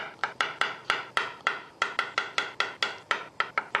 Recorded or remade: recorded